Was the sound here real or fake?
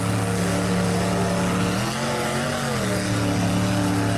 real